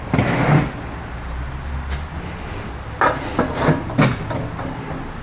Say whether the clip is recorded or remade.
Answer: recorded